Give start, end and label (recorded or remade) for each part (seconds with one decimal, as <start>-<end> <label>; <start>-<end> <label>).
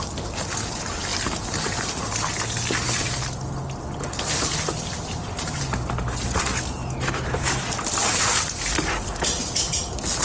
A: 0.0-10.2 recorded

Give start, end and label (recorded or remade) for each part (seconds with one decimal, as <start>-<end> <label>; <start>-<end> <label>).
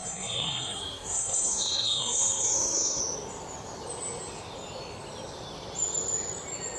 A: 0.0-3.0 remade; 3.0-6.8 recorded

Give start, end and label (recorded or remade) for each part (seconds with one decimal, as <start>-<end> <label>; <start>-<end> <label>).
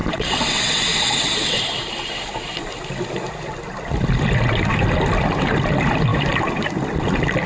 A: 0.0-1.6 remade; 1.6-7.5 recorded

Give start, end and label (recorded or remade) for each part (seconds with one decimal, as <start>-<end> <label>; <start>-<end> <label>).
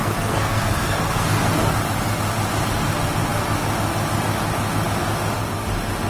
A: 0.0-1.7 remade; 1.7-6.1 recorded